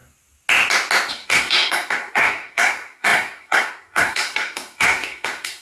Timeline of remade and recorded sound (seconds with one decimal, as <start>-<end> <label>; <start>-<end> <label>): 0.0-1.1 recorded; 1.1-5.6 remade